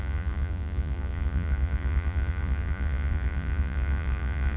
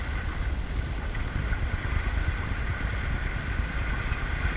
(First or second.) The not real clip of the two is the first